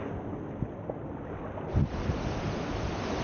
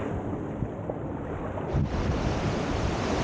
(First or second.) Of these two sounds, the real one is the first